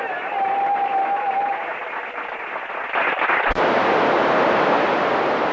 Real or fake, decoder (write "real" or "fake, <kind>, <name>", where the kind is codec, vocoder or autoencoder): real